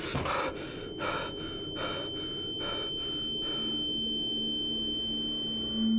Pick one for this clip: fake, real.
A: real